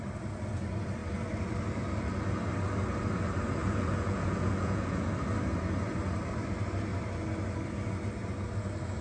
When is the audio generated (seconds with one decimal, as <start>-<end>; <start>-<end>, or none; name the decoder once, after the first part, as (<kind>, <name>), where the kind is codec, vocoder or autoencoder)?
3.6-5.1 (vocoder, Vocos)